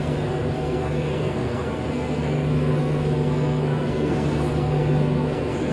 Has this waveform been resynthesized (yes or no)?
yes